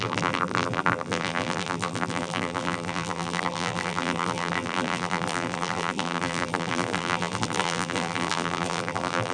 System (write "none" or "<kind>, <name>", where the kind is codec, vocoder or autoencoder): vocoder, BigVGAN v2